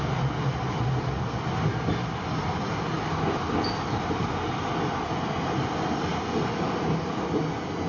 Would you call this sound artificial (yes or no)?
no